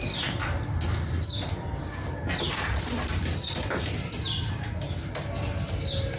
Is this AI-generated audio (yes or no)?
no